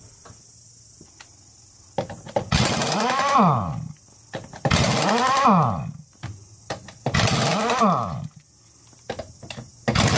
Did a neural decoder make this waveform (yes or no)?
no